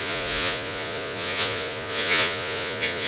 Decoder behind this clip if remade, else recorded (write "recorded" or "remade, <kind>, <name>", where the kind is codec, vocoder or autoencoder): remade, vocoder, Vocos